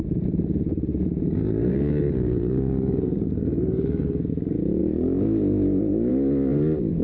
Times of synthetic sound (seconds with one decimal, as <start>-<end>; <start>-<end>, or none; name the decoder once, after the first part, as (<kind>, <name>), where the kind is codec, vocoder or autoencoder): 1.7-4.3 (codec, DAC); 4.8-6.1